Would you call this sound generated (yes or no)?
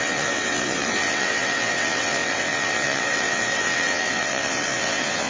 yes